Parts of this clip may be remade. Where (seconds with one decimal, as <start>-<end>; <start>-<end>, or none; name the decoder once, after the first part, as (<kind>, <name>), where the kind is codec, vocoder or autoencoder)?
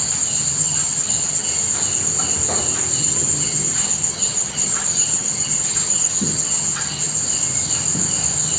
0.6-1.5 (vocoder, HiFi-GAN); 3.0-7.2